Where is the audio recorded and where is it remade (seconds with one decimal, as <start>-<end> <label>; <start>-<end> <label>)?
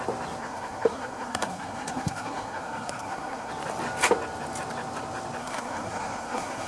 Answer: 0.0-0.4 recorded; 0.4-3.5 remade; 3.5-5.4 recorded; 5.4-6.7 remade